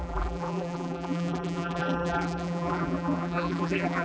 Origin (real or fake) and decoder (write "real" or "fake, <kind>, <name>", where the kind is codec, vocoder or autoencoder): fake, vocoder, BigVGAN v2